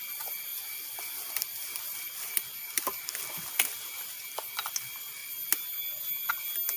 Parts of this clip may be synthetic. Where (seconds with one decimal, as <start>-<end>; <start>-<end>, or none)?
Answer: none